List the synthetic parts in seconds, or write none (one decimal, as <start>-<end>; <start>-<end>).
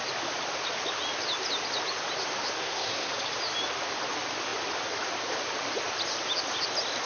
2.6-3.1